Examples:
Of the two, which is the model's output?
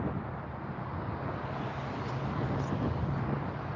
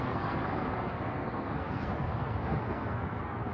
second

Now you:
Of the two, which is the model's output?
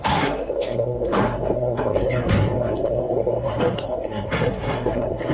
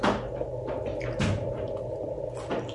first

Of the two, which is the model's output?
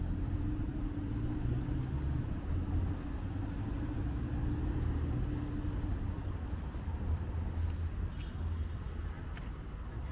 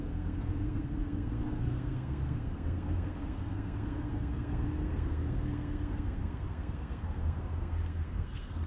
second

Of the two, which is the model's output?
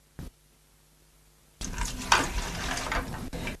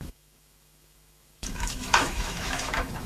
second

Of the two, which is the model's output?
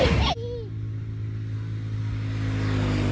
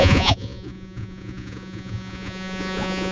second